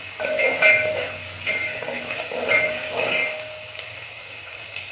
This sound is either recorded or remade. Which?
remade